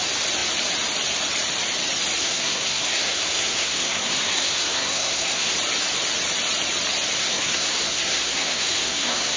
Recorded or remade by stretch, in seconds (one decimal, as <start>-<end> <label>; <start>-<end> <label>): 0.0-2.2 recorded; 2.2-5.5 remade; 5.5-7.2 recorded; 7.2-9.4 remade